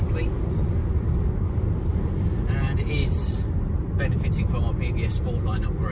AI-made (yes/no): no